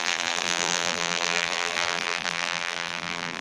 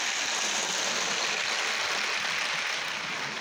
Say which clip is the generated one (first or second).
first